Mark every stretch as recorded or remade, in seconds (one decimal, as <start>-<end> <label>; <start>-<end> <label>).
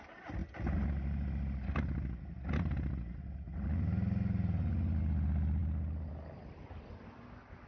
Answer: 0.0-7.7 recorded